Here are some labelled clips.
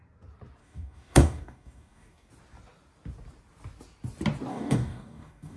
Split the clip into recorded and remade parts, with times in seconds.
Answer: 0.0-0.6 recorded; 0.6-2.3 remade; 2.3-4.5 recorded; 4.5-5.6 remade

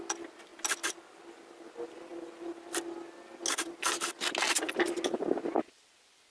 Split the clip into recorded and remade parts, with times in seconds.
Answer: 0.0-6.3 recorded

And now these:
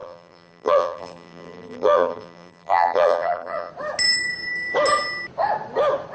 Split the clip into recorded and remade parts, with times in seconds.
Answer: 0.0-3.7 remade; 3.7-6.1 recorded

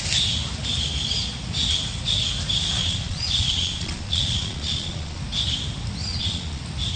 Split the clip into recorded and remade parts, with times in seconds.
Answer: 0.0-2.8 recorded; 2.8-5.2 remade; 5.2-6.1 recorded; 6.1-6.6 remade; 6.6-7.0 recorded

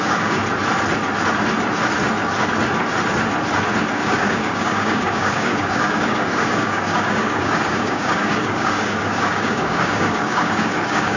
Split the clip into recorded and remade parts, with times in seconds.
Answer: 0.0-0.4 remade; 0.4-3.9 recorded; 3.9-11.2 remade